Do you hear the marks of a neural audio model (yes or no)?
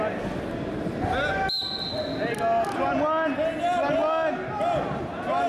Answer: no